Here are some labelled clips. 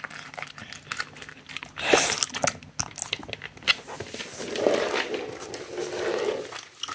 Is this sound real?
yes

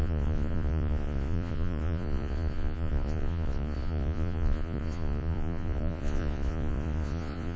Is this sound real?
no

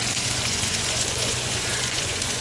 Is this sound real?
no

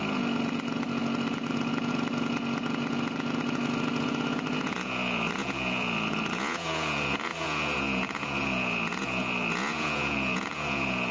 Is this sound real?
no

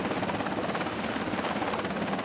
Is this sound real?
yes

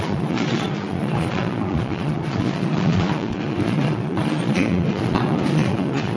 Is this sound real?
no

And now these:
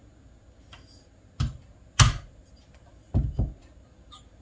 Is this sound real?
yes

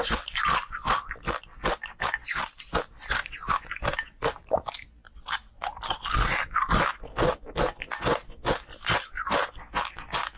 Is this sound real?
yes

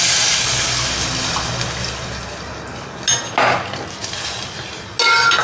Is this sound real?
yes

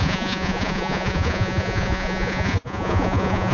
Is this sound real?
no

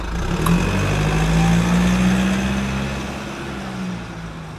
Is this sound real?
yes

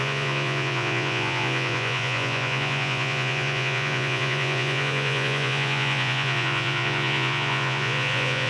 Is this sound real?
no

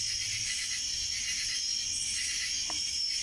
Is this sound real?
yes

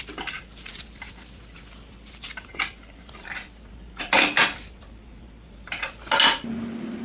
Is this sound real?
yes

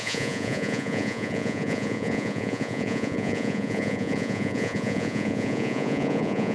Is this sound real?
no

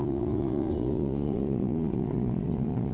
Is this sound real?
no